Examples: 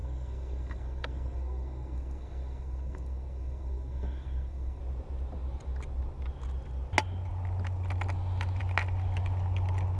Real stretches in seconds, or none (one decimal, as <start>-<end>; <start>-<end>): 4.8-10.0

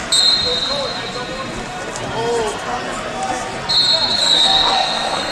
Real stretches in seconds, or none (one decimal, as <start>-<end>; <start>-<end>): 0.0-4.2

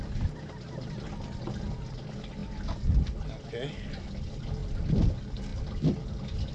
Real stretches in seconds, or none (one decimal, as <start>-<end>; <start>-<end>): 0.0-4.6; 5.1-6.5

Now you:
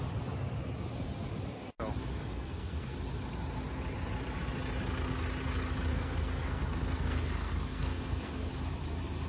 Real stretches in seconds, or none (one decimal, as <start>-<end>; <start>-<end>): 0.0-2.2; 3.0-5.9; 8.5-9.3